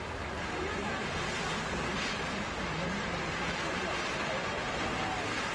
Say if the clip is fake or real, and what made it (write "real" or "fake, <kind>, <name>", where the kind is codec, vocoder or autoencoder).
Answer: real